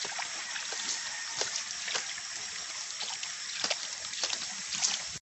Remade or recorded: recorded